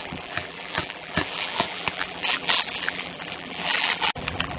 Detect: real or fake fake